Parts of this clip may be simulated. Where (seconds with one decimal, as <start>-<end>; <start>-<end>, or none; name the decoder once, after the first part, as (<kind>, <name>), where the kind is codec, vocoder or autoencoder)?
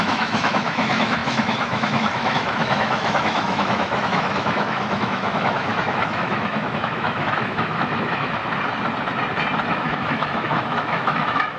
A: 0.0-8.4 (autoencoder, DAC-VAE); 9.7-11.6